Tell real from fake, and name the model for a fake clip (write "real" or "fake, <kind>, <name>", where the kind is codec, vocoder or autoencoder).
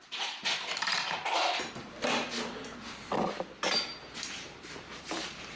real